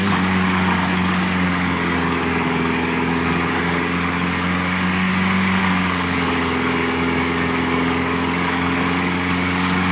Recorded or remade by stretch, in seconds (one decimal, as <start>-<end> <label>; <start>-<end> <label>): 0.0-5.1 remade; 5.1-5.6 recorded; 5.6-9.9 remade